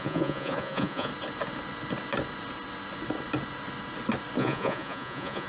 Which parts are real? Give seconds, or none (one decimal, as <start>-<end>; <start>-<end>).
1.1-4.4